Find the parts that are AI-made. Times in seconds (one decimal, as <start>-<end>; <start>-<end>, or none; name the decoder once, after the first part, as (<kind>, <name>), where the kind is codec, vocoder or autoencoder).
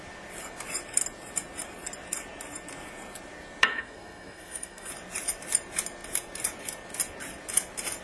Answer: 3.7-4.9 (codec, SNAC)